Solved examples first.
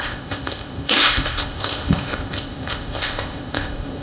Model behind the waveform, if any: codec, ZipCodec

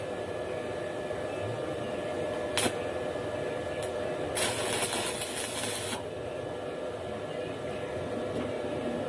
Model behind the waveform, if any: none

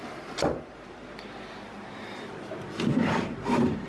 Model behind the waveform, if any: vocoder, BigVGAN v2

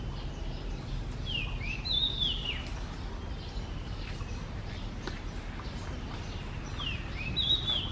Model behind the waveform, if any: none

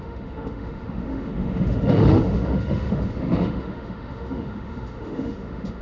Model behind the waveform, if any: autoencoder, DAC-VAE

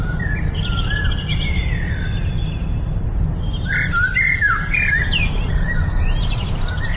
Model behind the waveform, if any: none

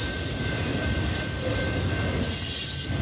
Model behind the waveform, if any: none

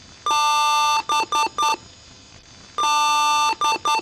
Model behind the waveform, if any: none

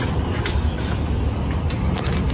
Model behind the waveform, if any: vocoder, BigVGAN v2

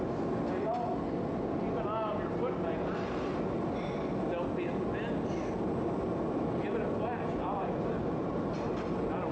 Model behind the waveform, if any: none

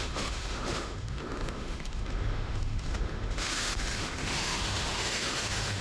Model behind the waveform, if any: autoencoder, DAC-VAE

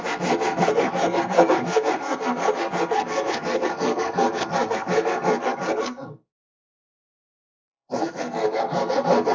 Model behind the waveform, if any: codec, SNAC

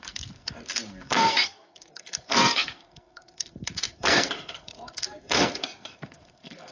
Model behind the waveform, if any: codec, SNAC